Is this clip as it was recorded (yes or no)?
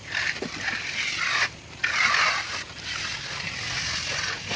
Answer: yes